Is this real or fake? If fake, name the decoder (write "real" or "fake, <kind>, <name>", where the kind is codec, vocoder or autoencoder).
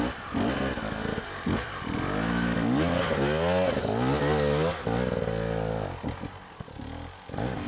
real